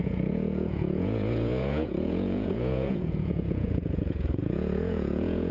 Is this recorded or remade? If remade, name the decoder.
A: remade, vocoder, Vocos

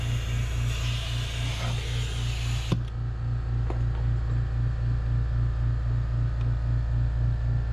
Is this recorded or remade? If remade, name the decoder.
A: recorded